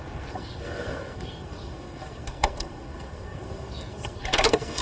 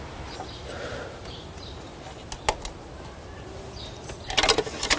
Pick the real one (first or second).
second